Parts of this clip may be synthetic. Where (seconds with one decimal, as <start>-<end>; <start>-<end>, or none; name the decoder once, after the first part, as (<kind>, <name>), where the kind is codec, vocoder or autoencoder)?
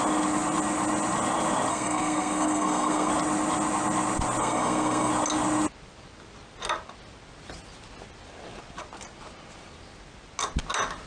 1.7-3.1 (codec, SNAC); 4.4-5.1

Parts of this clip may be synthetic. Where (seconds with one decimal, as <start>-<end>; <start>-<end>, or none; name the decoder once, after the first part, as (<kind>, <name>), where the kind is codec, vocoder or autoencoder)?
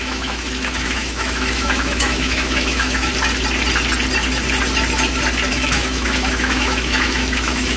0.0-3.1 (autoencoder, DAC-VAE); 5.5-7.8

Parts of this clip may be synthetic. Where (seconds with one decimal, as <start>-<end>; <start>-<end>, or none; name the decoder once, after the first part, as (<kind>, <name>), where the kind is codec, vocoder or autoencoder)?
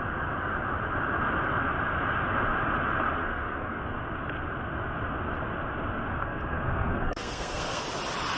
3.2-3.8 (codec, SNAC); 6.1-7.8